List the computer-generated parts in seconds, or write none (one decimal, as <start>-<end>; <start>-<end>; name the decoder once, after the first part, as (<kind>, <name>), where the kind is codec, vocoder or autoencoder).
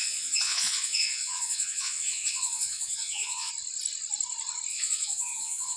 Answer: 0.0-3.5 (vocoder, Vocos); 4.7-5.8